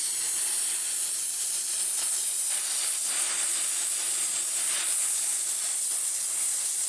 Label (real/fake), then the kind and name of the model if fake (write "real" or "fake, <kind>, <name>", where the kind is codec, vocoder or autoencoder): real